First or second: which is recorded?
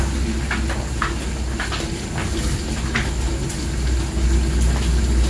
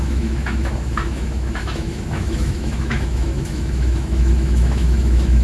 first